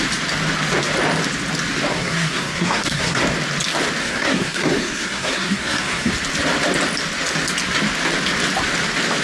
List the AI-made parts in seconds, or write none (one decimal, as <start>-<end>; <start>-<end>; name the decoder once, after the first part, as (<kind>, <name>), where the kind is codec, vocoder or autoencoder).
1.9-3.2 (codec, SNAC); 4.0-6.1